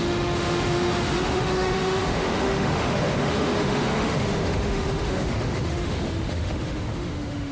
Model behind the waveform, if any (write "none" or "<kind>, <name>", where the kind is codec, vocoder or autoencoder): autoencoder, DAC-VAE